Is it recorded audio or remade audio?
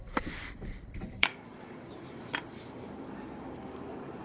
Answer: remade